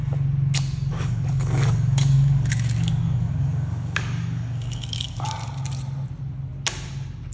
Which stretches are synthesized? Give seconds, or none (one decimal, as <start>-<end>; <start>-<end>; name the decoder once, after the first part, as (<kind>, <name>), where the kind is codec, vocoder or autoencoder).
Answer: 0.9-5.3 (codec, DAC)

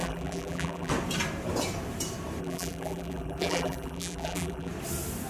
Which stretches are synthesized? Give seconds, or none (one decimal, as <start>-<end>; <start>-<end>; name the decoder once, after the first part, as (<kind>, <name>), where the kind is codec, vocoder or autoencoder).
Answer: 0.0-0.9 (vocoder, BigVGAN v2); 2.4-4.7

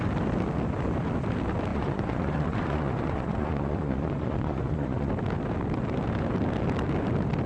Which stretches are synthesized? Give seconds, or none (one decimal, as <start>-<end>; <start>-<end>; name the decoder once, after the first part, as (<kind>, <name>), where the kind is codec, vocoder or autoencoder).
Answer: 1.7-5.1 (vocoder, Vocos)

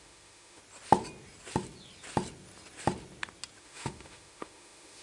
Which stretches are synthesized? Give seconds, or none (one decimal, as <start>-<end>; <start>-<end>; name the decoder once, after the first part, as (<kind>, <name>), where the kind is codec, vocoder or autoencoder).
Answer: 0.0-0.6 (autoencoder, DAC-VAE); 3.6-5.0

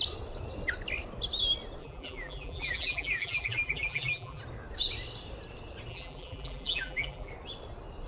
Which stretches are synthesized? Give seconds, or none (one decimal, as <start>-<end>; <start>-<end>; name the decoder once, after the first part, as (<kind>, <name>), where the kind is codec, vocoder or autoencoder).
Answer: 1.8-4.4 (vocoder, BigVGAN v2); 5.9-7.3

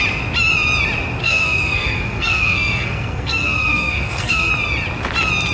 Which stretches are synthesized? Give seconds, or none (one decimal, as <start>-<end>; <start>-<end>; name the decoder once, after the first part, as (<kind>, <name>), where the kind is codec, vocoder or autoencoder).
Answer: 1.2-4.5 (codec, SNAC)

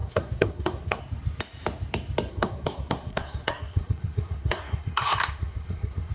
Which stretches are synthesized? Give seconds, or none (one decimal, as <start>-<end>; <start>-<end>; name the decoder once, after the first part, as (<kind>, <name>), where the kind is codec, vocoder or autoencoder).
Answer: 0.0-1.0 (codec, SNAC); 2.3-6.1